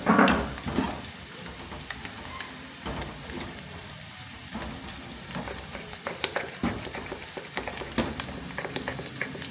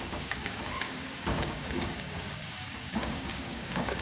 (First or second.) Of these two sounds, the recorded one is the first